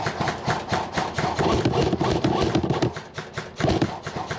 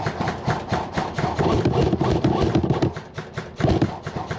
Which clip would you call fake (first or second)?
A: second